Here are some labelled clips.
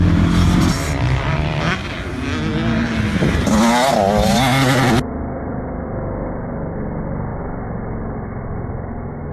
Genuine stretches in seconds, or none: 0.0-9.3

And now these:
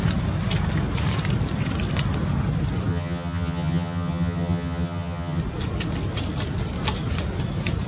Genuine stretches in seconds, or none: 0.0-2.9; 5.4-7.9

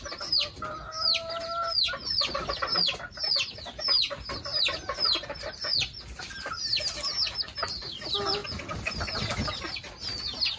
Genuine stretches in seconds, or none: 0.0-10.6

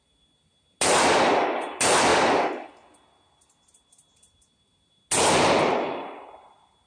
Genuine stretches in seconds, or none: 0.0-6.9

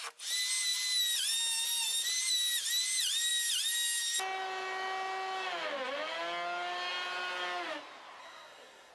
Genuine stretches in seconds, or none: 0.0-8.2